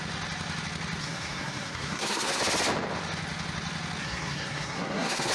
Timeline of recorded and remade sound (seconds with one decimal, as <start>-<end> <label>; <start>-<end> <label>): 0.0-1.0 recorded; 1.0-2.4 remade; 2.4-4.0 recorded; 4.0-5.3 remade